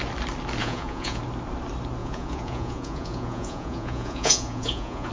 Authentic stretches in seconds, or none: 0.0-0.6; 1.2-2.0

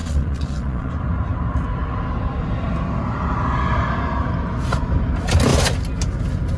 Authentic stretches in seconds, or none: 0.9-6.6

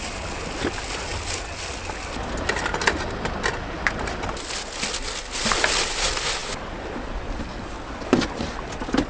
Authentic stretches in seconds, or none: 0.0-9.1

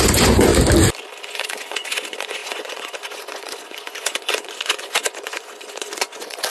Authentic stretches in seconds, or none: 0.5-1.2

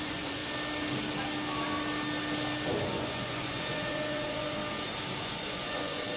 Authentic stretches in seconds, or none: 0.4-2.7; 4.6-5.2

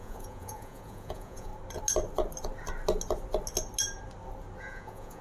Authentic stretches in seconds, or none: 1.5-4.6